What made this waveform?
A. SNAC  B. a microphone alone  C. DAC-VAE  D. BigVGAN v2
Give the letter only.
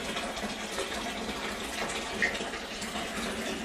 B